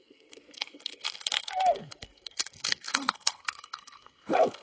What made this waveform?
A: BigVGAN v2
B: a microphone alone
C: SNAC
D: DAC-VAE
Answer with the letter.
C